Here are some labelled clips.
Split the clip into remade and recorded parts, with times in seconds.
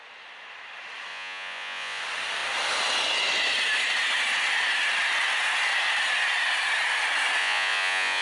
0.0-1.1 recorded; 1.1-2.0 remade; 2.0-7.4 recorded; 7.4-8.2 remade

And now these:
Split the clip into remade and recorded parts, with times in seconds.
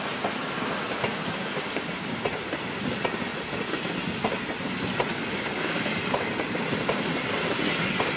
0.0-1.1 recorded; 1.1-2.2 remade; 2.2-5.1 recorded; 5.1-5.9 remade; 5.9-8.2 recorded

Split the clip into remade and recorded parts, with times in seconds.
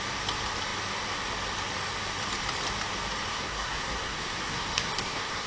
0.0-3.3 recorded; 3.3-5.5 remade